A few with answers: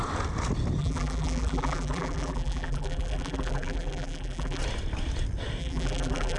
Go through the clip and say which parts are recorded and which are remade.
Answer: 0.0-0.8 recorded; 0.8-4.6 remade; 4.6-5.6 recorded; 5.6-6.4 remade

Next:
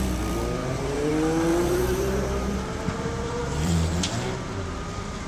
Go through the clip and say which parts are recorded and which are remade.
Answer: 0.0-0.6 recorded; 0.6-1.1 remade; 1.1-1.5 recorded; 1.5-4.0 remade; 4.0-5.3 recorded

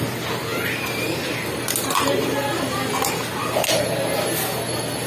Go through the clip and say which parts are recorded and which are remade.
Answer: 0.0-5.1 recorded

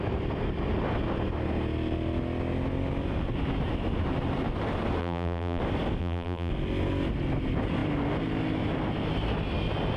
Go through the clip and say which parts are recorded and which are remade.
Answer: 0.0-5.0 recorded; 5.0-5.6 remade; 5.6-6.0 recorded; 6.0-6.5 remade; 6.5-10.0 recorded